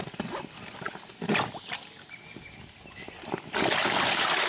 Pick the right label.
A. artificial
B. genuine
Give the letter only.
B